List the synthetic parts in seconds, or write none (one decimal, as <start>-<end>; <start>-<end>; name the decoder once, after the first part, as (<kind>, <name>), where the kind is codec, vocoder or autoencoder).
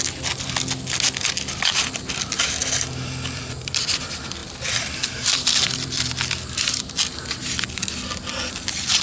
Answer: 2.6-4.0 (vocoder, BigVGAN v2); 4.4-6.1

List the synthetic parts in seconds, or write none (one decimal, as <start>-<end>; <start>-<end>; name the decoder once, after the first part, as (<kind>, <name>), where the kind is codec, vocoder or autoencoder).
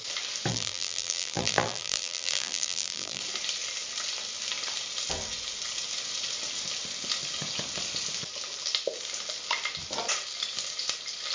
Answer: 0.5-3.2 (vocoder, BigVGAN v2)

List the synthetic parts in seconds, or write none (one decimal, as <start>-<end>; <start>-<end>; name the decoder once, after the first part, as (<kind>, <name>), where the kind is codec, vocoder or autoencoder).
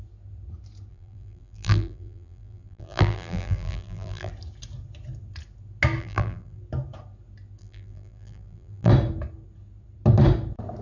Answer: 0.9-4.3 (vocoder, BigVGAN v2); 6.0-6.6; 7.6-8.9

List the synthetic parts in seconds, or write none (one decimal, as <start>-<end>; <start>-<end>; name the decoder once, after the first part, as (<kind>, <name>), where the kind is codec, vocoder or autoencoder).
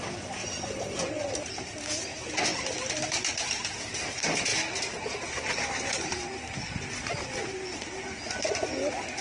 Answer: none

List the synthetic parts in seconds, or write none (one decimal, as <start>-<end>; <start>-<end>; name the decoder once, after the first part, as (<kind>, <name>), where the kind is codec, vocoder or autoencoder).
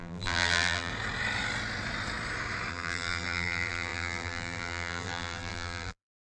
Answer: 0.0-0.9 (vocoder, BigVGAN v2); 2.7-6.2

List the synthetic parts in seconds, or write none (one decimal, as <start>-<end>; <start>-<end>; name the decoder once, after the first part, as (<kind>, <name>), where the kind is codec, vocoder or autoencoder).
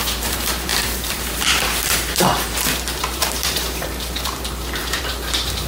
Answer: 0.0-5.1 (vocoder, BigVGAN v2)